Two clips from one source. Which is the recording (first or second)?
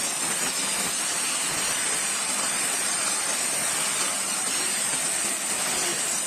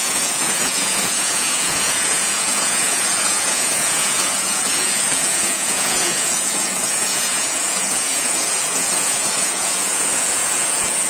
first